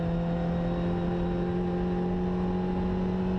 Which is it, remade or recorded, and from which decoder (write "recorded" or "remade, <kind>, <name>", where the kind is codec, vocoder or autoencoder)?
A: recorded